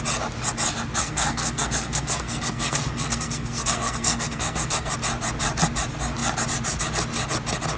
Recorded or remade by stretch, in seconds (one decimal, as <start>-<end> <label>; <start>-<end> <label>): 0.0-1.0 recorded; 1.0-4.9 remade; 4.9-7.8 recorded